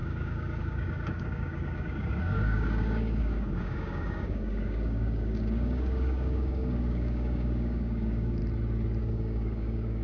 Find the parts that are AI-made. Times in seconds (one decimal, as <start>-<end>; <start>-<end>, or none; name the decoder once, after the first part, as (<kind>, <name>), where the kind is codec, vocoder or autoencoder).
0.0-8.4 (codec, DAC); 9.0-10.0